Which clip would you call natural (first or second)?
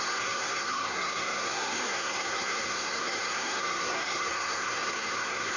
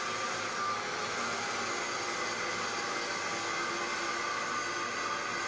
second